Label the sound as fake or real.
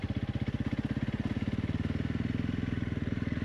real